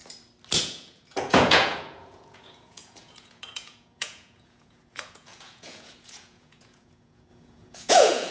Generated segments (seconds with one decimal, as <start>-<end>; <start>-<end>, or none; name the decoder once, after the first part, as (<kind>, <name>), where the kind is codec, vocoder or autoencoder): 0.6-8.3 (vocoder, Vocos)